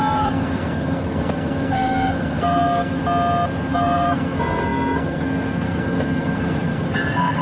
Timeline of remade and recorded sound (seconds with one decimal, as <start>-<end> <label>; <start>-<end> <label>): 0.0-3.0 remade; 3.0-3.7 recorded; 3.7-7.4 remade